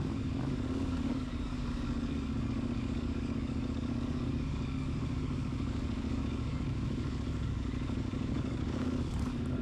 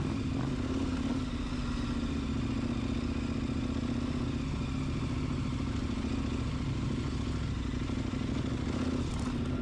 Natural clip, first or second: second